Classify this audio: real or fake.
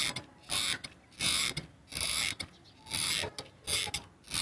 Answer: real